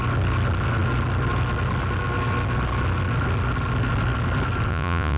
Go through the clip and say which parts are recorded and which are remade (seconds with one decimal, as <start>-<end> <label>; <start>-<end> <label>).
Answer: 0.0-4.7 recorded; 4.7-5.2 remade